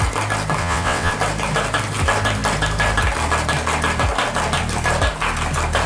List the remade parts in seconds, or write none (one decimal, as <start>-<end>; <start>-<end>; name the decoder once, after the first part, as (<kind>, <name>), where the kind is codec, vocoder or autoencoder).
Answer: 0.6-1.1 (vocoder, WaveNeXt)